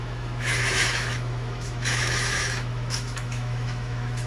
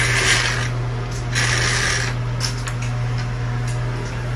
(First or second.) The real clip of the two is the second